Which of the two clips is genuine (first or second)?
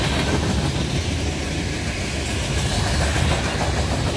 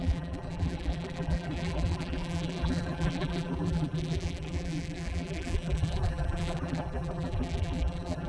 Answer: first